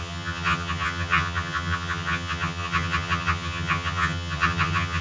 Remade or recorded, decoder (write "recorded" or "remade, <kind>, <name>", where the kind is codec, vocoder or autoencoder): remade, vocoder, HiFi-GAN